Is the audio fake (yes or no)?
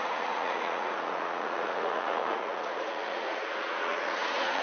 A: yes